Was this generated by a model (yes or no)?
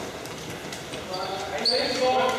no